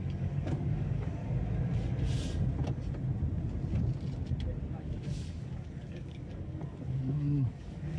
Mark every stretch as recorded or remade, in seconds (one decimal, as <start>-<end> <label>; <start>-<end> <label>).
0.0-1.2 remade; 1.2-4.8 recorded; 4.8-8.0 remade